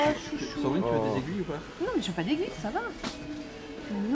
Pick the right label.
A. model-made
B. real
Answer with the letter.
B